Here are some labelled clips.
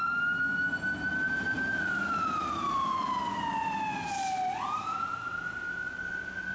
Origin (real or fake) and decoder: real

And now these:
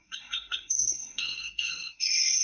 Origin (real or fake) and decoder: fake, codec, SNAC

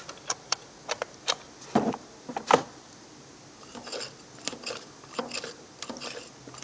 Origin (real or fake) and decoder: real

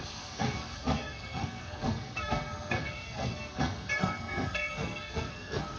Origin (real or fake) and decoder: fake, codec, SNAC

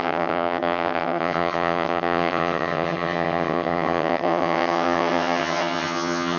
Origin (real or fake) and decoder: fake, vocoder, HiFi-GAN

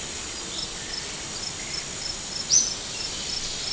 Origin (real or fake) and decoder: real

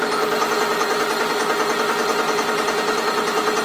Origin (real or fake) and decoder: real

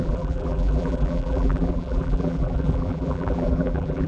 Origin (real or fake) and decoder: fake, vocoder, BigVGAN v2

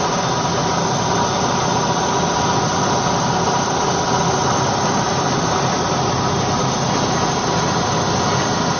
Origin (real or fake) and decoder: real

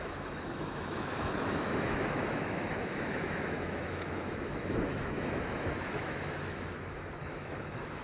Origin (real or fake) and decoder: fake, autoencoder, DAC-VAE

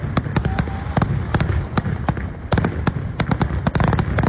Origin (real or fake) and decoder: real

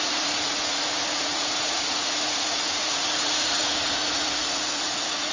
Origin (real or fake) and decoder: fake, vocoder, Vocos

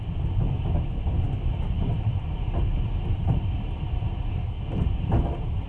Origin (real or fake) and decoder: real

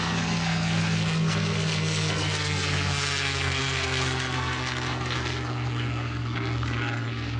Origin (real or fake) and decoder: fake, codec, SNAC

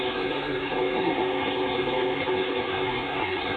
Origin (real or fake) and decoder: fake, codec, SNAC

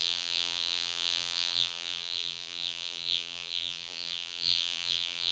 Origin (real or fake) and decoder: fake, vocoder, BigVGAN v2